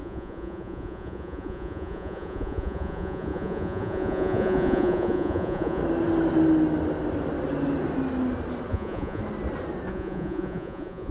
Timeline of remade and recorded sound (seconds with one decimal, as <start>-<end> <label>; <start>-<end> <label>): 0.0-5.8 remade; 5.8-8.7 recorded; 8.7-9.2 remade; 9.2-9.9 recorded; 9.9-11.1 remade